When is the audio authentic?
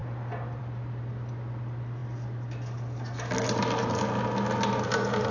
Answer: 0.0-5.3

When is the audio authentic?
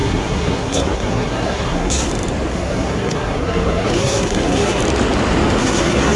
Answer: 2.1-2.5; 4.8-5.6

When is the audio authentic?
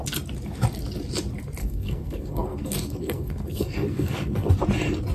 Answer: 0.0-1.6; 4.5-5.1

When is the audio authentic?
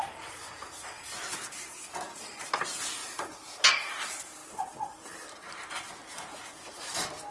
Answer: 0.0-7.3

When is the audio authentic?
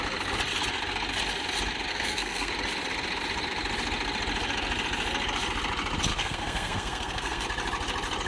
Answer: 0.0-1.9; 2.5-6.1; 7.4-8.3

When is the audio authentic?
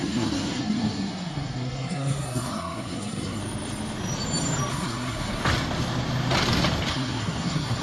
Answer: 3.4-4.7; 5.4-6.9